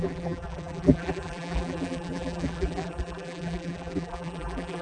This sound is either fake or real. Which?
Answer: fake